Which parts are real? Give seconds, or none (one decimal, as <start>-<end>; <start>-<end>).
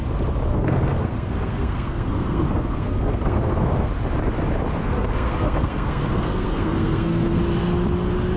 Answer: 0.0-0.5; 3.9-4.8; 7.4-8.4